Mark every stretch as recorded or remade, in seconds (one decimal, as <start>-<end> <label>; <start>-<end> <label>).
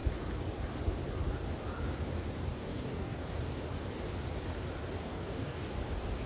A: 0.0-2.6 recorded; 2.6-3.4 remade; 3.4-5.0 recorded; 5.0-5.7 remade; 5.7-6.3 recorded